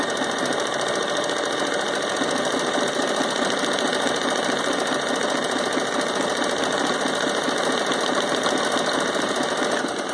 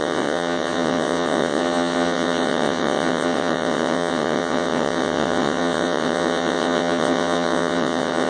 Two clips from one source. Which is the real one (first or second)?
first